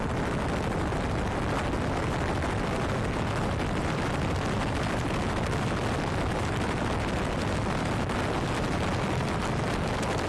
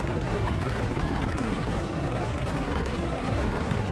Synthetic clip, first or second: second